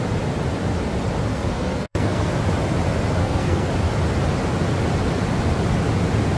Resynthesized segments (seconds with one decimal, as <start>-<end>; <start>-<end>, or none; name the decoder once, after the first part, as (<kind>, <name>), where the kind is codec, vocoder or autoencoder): 1.3-2.3 (codec, SNAC); 3.2-3.7